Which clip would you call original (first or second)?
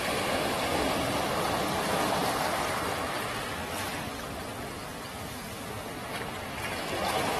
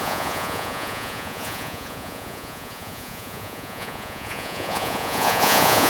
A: first